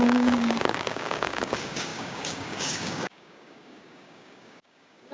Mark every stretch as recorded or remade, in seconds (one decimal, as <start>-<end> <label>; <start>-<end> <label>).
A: 0.0-5.1 remade